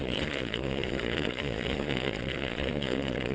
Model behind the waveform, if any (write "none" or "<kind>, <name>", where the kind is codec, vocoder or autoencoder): vocoder, Vocos